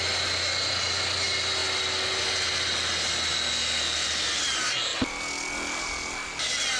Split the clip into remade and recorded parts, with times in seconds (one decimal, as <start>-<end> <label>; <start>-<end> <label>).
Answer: 0.0-6.8 recorded